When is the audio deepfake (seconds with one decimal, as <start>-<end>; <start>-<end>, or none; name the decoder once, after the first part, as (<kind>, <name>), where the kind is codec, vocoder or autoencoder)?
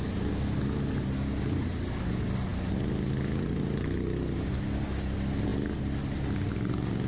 none